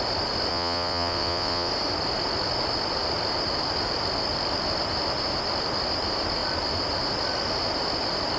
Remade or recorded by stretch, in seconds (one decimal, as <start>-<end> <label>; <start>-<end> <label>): 0.0-0.5 recorded; 0.5-1.7 remade; 1.7-8.4 recorded